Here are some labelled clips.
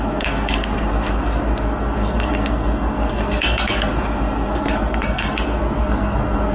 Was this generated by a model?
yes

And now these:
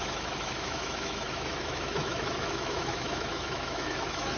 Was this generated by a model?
yes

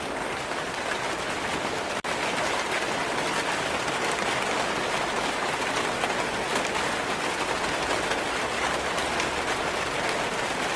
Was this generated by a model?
no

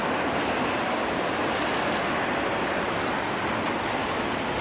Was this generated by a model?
no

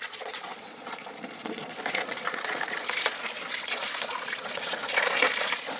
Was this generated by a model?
yes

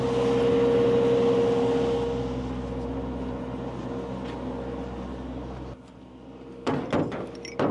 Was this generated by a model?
no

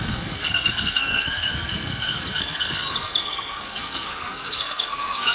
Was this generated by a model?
yes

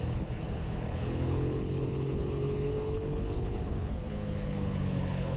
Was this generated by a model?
yes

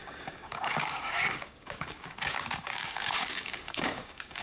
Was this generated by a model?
yes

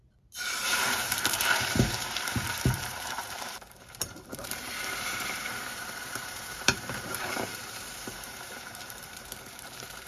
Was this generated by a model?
yes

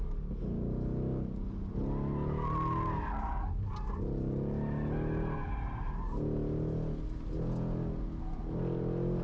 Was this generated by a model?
no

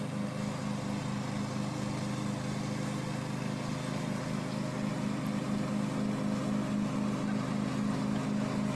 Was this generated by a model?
no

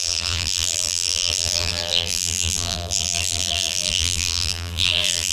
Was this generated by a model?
yes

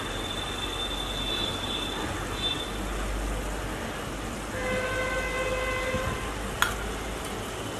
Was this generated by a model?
no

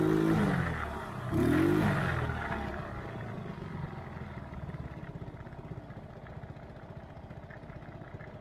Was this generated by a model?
no